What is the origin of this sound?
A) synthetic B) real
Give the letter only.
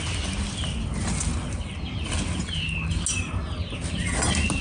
B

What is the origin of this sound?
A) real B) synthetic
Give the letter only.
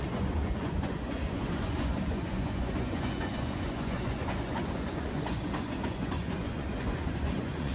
B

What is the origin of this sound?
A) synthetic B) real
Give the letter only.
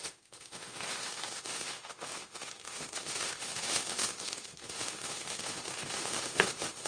A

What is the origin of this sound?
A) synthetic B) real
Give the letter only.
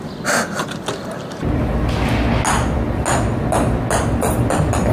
B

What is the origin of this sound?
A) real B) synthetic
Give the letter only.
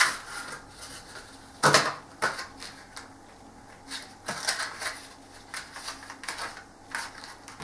A